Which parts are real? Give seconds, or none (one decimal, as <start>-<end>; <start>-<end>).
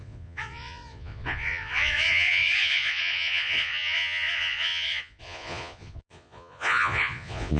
none